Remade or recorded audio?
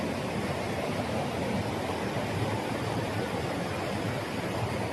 recorded